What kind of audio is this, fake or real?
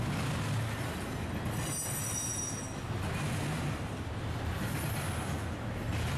real